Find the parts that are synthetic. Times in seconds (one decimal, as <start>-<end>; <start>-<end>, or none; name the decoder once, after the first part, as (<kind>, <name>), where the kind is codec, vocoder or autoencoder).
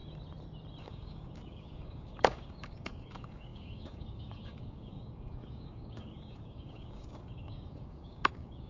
0.8-8.7 (codec, DAC)